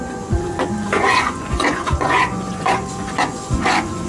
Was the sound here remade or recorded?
remade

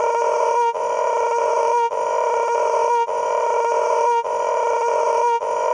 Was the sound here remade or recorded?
remade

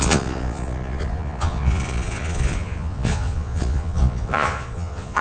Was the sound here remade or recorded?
remade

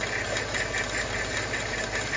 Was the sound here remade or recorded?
recorded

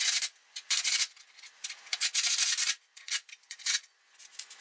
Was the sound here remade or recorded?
remade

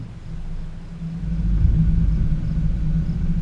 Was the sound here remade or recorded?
recorded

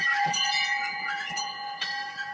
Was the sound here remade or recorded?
remade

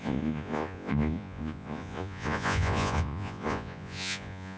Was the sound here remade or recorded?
remade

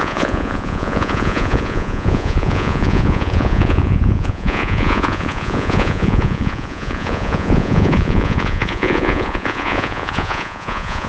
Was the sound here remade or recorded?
remade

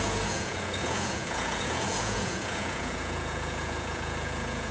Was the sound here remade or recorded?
remade